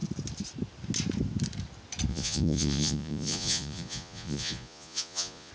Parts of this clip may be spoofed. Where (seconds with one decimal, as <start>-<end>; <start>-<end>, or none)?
2.1-5.5